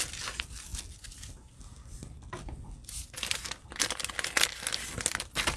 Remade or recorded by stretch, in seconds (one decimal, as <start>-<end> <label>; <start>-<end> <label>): 0.0-5.6 recorded